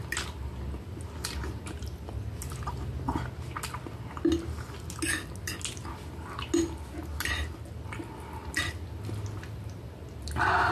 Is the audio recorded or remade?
recorded